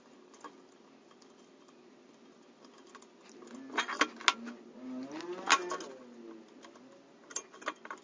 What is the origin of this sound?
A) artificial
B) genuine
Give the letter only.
B